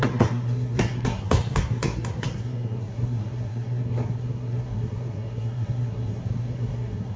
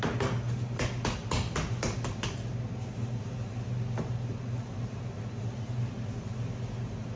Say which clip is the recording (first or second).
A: second